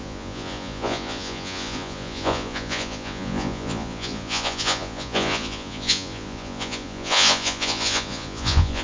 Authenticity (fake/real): fake